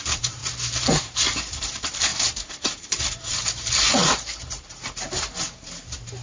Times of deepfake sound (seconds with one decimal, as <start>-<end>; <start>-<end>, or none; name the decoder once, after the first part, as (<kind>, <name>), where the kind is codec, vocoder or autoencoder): 0.0-0.4 (vocoder, BigVGAN v2); 1.0-6.2